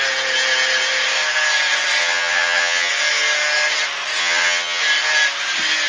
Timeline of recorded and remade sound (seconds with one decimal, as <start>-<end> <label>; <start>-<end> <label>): 0.0-2.0 recorded; 2.0-2.9 remade; 2.9-4.2 recorded; 4.2-4.8 remade; 4.8-5.9 recorded

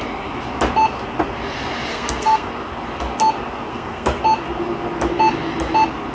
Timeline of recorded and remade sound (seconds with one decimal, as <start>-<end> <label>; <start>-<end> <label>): 0.0-1.9 recorded; 1.9-2.5 remade; 2.5-3.7 recorded; 3.7-4.2 remade; 4.2-6.1 recorded

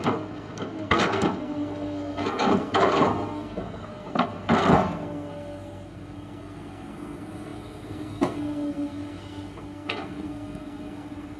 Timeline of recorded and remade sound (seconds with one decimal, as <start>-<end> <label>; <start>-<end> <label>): 0.0-11.4 remade

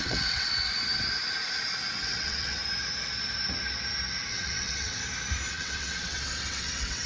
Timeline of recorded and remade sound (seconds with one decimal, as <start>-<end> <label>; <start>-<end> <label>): 0.0-0.5 remade; 0.5-2.0 recorded; 2.0-2.6 remade; 2.6-4.3 recorded; 4.3-5.0 remade; 5.0-5.5 recorded; 5.5-7.1 remade

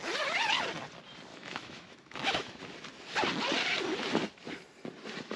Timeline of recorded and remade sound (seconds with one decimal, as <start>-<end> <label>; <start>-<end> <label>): 0.0-1.3 recorded; 1.3-2.6 remade; 2.6-5.4 recorded

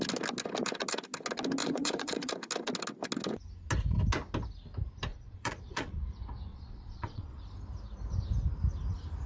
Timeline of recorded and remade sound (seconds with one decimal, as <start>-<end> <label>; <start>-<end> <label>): 0.0-1.6 recorded; 1.6-2.3 remade; 2.3-5.1 recorded; 5.1-6.0 remade; 6.0-6.5 recorded; 6.5-7.4 remade; 7.4-9.3 recorded

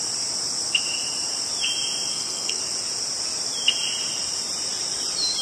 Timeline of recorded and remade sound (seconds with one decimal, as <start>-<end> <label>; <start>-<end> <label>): 0.0-2.1 recorded; 2.1-2.6 remade; 2.6-5.4 recorded